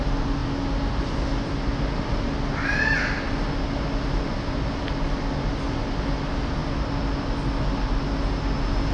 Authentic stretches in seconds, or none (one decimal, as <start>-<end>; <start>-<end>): 0.0-8.9